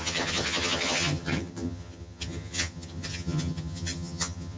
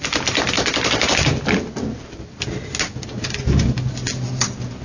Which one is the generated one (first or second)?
first